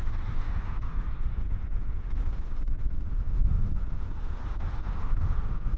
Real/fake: fake